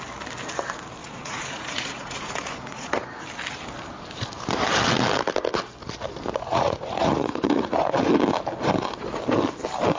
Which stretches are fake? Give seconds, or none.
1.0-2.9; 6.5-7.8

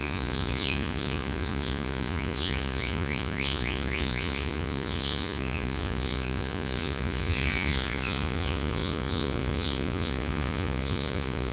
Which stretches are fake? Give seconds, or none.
0.0-11.5

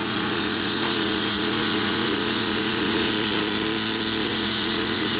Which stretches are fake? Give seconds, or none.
0.0-3.1; 4.3-5.2

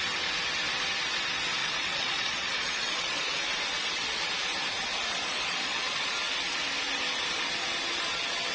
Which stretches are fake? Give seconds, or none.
1.6-3.2; 5.2-6.1